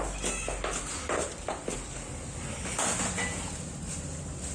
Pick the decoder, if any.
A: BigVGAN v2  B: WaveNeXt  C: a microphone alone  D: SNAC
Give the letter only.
C